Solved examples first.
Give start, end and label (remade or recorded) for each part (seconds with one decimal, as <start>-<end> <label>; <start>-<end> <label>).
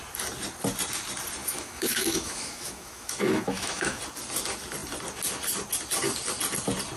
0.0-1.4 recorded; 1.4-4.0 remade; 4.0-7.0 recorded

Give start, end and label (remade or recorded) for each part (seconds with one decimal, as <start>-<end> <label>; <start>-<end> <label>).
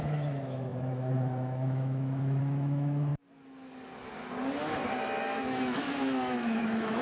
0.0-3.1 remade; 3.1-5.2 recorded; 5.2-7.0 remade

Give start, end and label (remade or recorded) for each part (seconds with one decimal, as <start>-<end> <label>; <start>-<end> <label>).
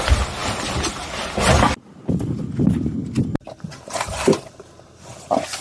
0.0-5.6 recorded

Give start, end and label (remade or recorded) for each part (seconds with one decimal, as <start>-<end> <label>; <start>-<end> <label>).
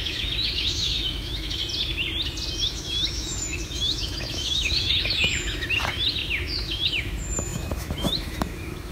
0.0-1.6 remade; 1.6-2.6 recorded; 2.6-8.9 remade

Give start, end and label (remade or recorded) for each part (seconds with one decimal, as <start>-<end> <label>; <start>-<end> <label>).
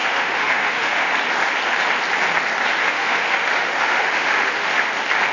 0.0-1.1 remade; 1.1-2.8 recorded; 2.8-4.8 remade; 4.8-5.3 recorded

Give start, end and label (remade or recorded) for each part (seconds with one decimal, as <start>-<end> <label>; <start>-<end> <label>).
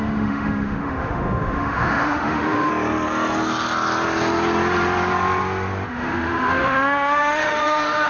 0.0-2.7 remade; 2.7-5.9 recorded; 5.9-8.1 remade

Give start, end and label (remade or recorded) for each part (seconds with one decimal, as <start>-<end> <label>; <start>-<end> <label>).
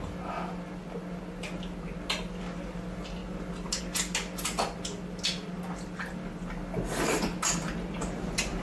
0.0-8.6 recorded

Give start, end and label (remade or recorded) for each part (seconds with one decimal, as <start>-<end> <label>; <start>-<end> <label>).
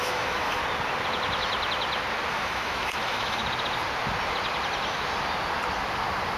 0.0-0.6 remade; 0.6-2.3 recorded; 2.3-3.4 remade; 3.4-6.4 recorded